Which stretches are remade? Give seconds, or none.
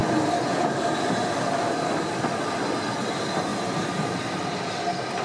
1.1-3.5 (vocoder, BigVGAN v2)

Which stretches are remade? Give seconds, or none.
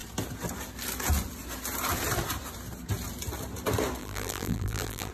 4.0-5.1 (vocoder, BigVGAN v2)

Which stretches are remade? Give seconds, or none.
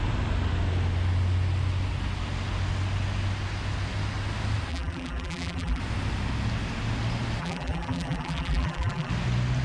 4.7-5.8 (vocoder, BigVGAN v2); 7.4-9.1